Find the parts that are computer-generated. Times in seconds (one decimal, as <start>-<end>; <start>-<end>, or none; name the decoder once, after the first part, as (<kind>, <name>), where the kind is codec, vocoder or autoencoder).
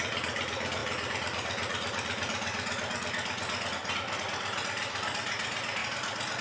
none